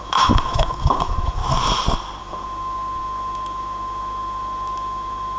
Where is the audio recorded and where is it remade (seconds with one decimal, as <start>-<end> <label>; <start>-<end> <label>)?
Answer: 0.0-1.4 remade; 1.4-2.2 recorded; 2.2-5.4 remade